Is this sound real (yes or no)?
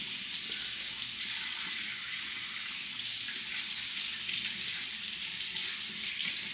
no